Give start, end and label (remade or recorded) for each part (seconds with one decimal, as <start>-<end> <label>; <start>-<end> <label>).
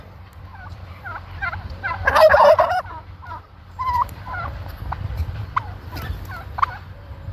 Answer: 0.0-0.5 recorded; 0.5-4.5 remade; 4.5-7.3 recorded